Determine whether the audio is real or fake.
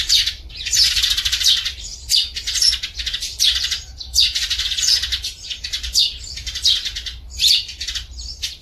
fake